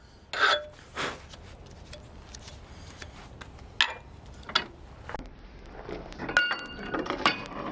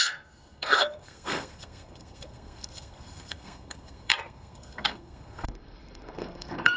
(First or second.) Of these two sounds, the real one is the first